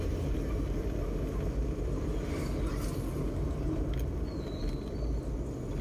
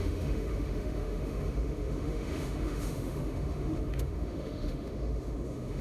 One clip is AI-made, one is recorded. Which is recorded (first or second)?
first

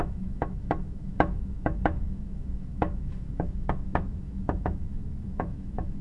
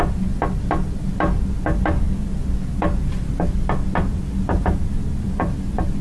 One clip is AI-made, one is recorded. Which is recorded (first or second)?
second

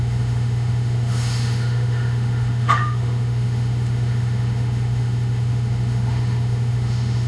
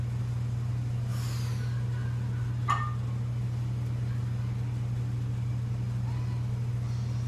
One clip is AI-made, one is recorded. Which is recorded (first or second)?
second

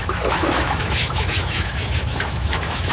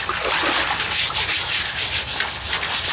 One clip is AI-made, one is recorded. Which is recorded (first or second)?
second